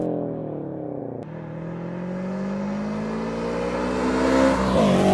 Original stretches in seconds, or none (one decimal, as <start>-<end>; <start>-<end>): 0.0-5.1